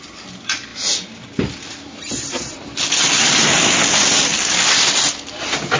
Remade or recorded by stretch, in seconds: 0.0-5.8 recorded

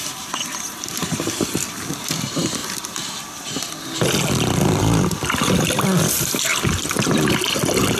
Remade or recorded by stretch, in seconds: 0.0-8.0 recorded

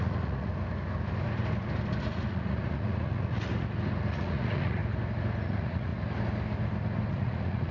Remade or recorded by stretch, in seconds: 0.0-0.5 remade; 0.5-2.1 recorded; 2.1-3.5 remade; 3.5-4.1 recorded; 4.1-4.8 remade; 4.8-5.4 recorded; 5.4-5.9 remade; 5.9-7.1 recorded; 7.1-7.7 remade

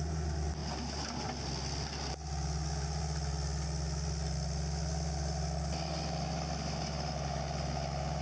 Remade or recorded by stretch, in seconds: 0.0-8.2 recorded

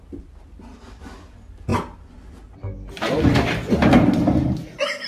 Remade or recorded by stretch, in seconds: 0.0-5.1 recorded

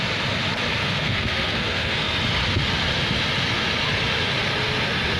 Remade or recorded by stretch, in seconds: 0.0-0.8 recorded; 0.8-2.1 remade; 2.1-5.2 recorded

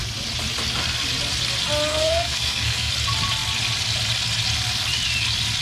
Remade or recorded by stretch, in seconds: 0.0-1.9 recorded; 1.9-2.9 remade; 2.9-5.6 recorded

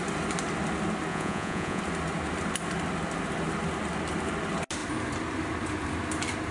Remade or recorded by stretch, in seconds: 0.0-1.1 recorded; 1.1-1.8 remade; 1.8-6.5 recorded